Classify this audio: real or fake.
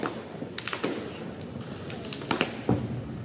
real